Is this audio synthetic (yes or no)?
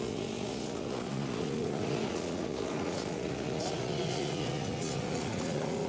yes